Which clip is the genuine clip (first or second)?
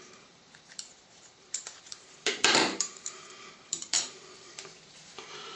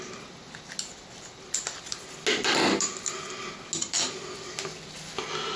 second